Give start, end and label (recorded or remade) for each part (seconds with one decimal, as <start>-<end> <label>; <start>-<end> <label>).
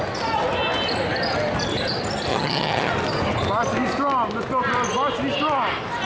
0.0-2.3 recorded; 2.3-2.9 remade; 2.9-6.0 recorded